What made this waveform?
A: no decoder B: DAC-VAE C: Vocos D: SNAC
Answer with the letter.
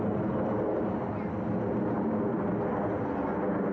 A